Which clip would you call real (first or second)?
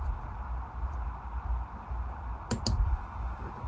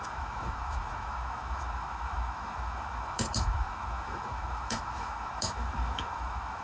first